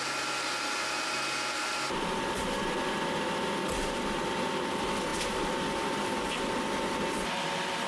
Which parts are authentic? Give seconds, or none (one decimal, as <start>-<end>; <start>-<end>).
0.0-7.9